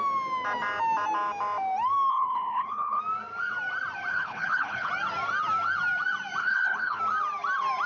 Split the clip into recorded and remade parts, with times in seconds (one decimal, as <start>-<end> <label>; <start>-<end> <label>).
0.0-2.1 recorded; 2.1-3.0 remade; 3.0-4.1 recorded; 4.1-4.9 remade; 4.9-6.4 recorded; 6.4-7.0 remade; 7.0-7.9 recorded